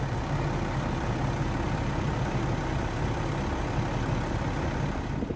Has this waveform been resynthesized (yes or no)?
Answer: no